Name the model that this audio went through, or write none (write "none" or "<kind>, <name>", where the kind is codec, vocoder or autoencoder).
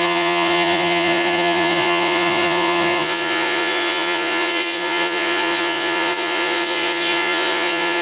vocoder, Vocos